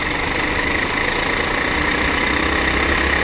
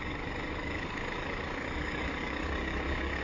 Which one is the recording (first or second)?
first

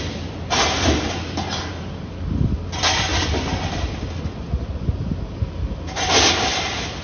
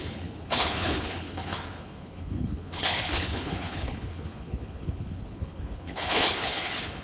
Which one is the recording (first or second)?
first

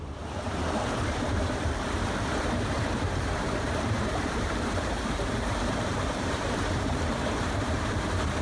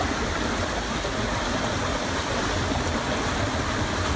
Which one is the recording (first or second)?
second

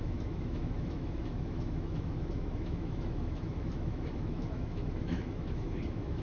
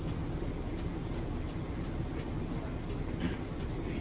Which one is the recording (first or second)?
second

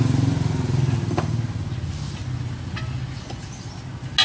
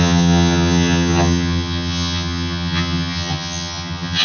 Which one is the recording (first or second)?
first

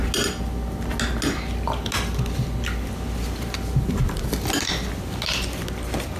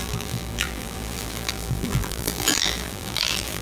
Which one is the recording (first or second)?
first